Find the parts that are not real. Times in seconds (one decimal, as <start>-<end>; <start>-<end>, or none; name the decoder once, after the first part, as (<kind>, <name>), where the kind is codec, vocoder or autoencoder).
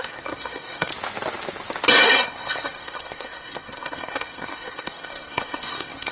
0.0-0.9 (codec, SNAC); 1.9-6.1